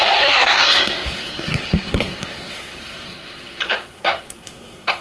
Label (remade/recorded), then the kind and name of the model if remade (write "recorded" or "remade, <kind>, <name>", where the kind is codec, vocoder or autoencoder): remade, codec, SNAC